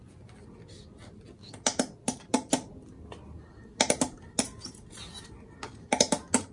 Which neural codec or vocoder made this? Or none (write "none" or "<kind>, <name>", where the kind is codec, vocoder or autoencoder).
none